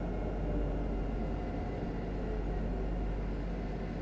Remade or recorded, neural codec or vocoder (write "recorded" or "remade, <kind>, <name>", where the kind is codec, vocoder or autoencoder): recorded